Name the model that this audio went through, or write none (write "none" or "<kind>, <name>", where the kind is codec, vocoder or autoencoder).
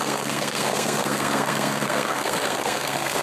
codec, SNAC